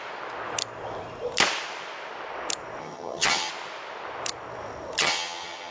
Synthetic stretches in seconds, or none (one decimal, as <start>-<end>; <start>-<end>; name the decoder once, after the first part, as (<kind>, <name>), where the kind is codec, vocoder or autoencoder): 2.8-3.5 (vocoder, HiFi-GAN); 5.0-5.7